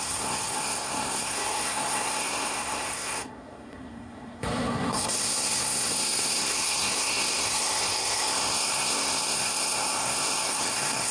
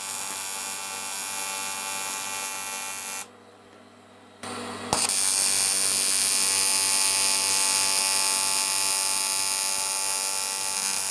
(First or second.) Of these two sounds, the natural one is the second